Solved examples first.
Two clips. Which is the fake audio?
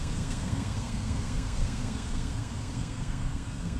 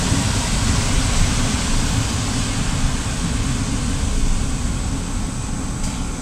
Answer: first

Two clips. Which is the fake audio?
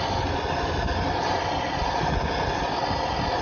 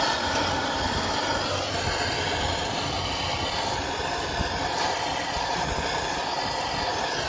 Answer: second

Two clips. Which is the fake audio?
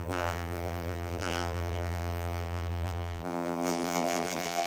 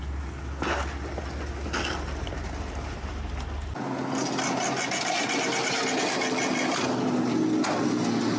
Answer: first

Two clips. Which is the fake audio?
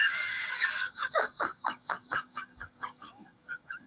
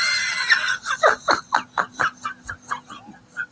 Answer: first